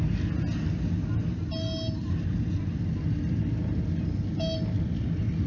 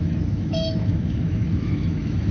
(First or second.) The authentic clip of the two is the first